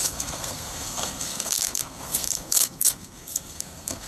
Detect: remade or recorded remade